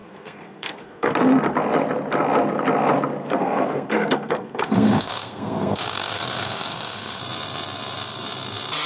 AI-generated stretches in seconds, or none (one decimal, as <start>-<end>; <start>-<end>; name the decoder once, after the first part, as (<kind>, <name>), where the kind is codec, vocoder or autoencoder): 0.0-1.1 (codec, SNAC); 3.2-7.2